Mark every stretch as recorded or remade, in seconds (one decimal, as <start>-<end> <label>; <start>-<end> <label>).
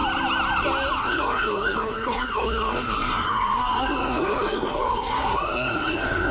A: 0.0-1.0 recorded; 1.0-6.3 remade